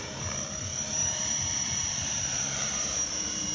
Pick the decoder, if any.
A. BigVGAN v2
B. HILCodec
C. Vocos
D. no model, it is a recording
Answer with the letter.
A